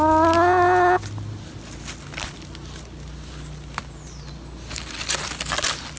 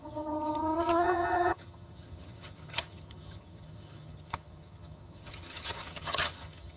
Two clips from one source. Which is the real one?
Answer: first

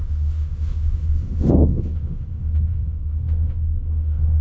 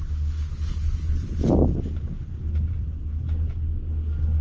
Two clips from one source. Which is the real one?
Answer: second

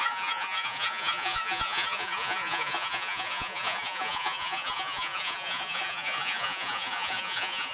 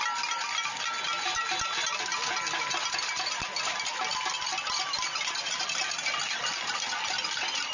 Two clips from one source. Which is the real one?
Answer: second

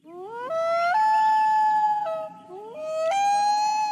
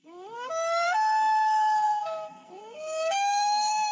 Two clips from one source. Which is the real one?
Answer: first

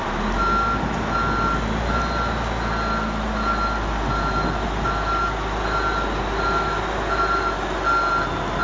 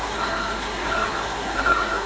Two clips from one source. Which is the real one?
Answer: first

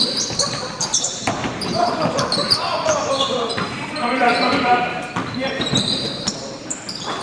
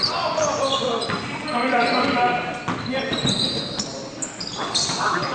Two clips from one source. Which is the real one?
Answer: second